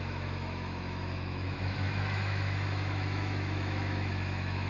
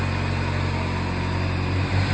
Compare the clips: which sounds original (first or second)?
second